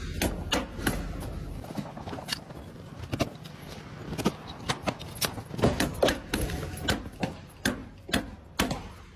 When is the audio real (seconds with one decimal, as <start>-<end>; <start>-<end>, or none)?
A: 0.0-9.2